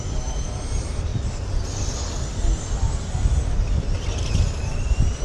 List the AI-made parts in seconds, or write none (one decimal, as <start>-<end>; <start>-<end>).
0.0-1.1; 4.0-5.2